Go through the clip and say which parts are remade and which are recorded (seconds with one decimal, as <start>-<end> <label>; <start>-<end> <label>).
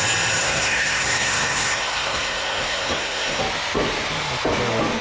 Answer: 0.0-0.4 recorded; 0.4-3.4 remade; 3.4-5.0 recorded